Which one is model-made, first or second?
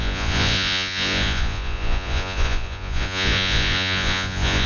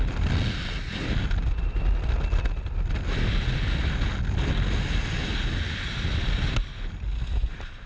first